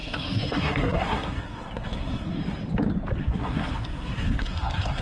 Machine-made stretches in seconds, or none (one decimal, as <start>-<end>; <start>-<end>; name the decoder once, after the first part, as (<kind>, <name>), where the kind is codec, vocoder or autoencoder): 0.0-2.4 (codec, SNAC); 3.2-5.0